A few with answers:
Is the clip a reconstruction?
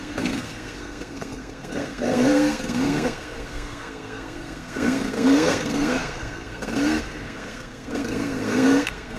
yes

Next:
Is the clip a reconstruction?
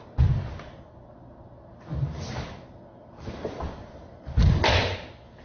no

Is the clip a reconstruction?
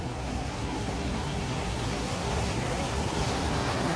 yes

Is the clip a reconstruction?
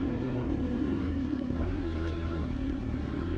yes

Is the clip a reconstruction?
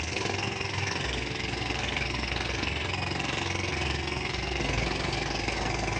yes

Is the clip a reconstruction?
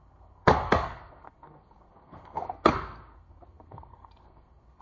yes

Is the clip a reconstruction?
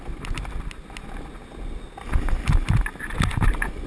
no